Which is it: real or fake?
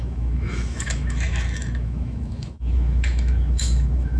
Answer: fake